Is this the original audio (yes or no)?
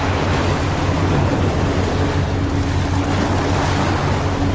yes